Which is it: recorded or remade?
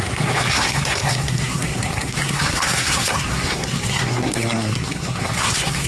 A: remade